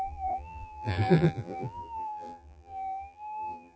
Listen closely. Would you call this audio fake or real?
fake